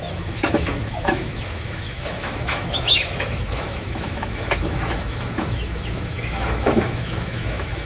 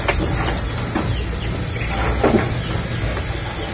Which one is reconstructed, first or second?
first